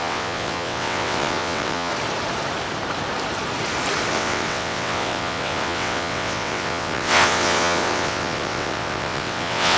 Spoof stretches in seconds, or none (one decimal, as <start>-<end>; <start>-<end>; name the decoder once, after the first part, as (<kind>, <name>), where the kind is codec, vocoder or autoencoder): 0.0-1.9 (vocoder, WaveNeXt); 4.1-9.8